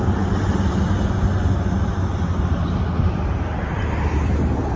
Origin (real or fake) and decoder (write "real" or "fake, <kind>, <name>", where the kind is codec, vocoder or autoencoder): real